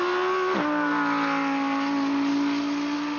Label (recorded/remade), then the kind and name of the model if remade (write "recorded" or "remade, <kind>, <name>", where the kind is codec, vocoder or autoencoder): recorded